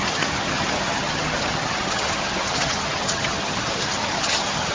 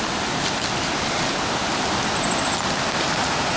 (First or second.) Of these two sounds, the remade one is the first